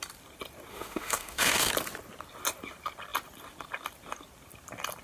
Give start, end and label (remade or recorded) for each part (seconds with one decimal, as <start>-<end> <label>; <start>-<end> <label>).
0.0-0.7 recorded; 0.7-1.7 remade; 1.7-5.0 recorded